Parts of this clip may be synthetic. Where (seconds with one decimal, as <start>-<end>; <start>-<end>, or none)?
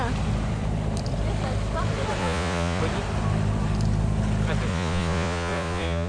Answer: 2.2-2.8; 4.7-6.1